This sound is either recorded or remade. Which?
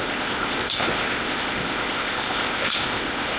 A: remade